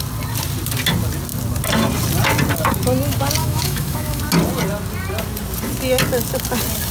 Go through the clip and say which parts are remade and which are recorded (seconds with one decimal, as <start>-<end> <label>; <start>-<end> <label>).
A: 0.0-3.4 recorded; 3.4-4.2 remade; 4.2-6.9 recorded